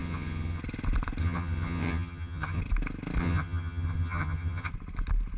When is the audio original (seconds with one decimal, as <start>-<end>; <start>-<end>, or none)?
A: 0.6-1.2; 2.6-3.2; 4.7-5.4